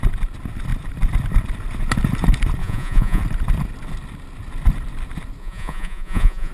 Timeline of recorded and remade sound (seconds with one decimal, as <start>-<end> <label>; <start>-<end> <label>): 0.0-2.6 recorded; 2.6-3.2 remade; 3.2-5.4 recorded; 5.4-6.5 remade